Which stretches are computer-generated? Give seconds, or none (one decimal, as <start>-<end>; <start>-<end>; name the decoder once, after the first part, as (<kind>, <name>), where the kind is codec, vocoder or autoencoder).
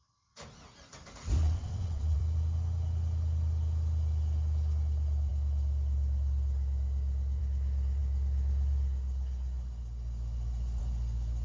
1.4-2.2 (vocoder, WaveNeXt)